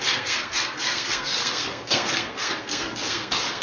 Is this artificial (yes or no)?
yes